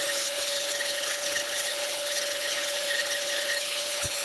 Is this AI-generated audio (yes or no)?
yes